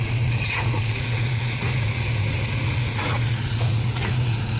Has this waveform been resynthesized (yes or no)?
yes